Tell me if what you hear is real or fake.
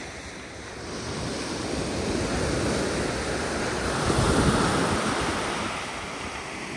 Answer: real